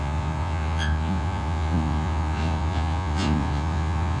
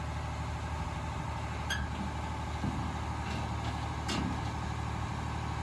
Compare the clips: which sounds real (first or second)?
second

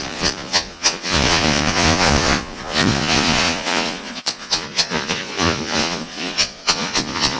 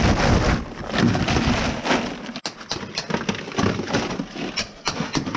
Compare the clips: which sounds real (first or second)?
second